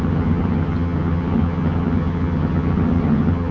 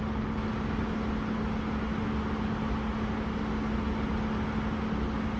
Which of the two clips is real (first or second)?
second